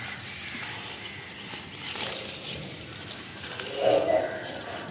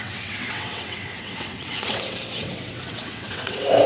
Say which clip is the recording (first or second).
first